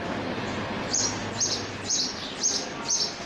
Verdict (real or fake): real